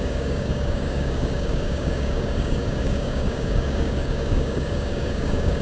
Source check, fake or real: fake